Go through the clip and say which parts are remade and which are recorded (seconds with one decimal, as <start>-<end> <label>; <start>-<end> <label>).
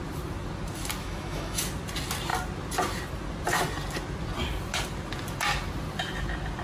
0.0-1.0 recorded; 1.0-1.6 remade; 1.6-6.6 recorded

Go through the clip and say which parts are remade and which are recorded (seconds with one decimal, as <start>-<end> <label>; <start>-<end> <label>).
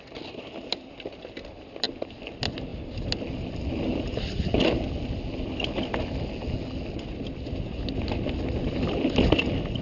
0.0-9.8 recorded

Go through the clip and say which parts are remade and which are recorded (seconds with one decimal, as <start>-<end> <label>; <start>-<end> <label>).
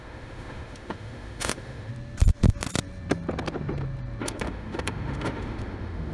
0.0-1.9 remade; 1.9-4.2 recorded; 4.2-6.1 remade